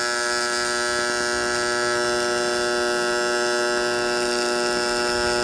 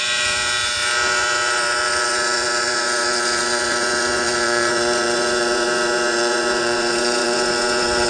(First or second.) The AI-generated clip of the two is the second